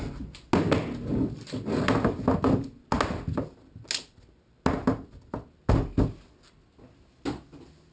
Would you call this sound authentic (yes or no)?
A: yes